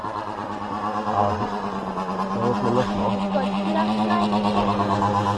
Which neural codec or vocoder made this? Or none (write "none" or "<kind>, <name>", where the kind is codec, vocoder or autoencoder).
none